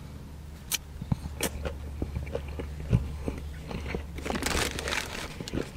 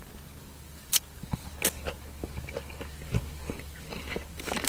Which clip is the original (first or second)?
first